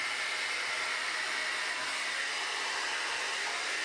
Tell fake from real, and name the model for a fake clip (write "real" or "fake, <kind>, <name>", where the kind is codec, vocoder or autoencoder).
real